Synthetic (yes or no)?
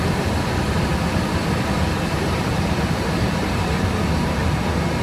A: no